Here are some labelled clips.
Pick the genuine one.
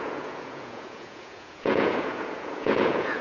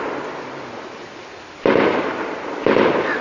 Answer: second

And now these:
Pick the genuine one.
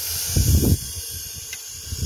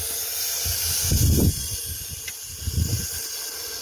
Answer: first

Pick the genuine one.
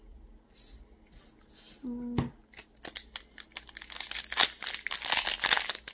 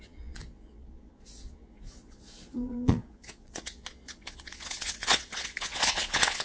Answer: first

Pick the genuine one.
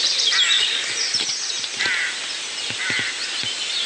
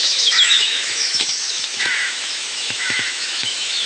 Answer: first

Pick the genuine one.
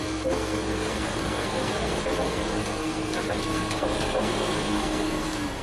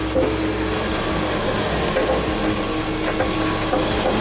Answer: second